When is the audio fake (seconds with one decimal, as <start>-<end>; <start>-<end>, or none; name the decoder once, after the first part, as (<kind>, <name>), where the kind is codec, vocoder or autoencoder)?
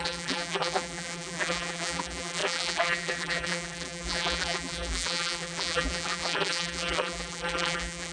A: 0.0-8.1 (vocoder, BigVGAN v2)